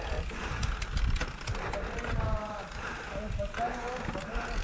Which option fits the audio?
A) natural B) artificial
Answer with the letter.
A